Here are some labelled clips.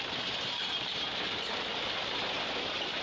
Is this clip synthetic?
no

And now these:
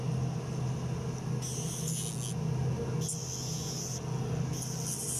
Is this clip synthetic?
no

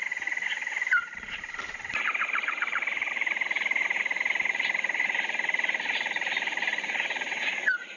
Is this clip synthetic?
yes